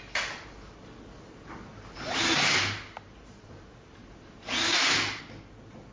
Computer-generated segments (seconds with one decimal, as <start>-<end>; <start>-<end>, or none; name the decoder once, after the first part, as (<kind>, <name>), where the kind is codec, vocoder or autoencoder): 1.7-5.2 (vocoder, BigVGAN v2)